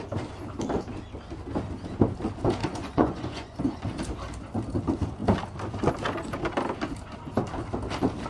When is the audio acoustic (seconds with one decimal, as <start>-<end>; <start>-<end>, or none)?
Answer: 0.0-2.6; 3.8-8.3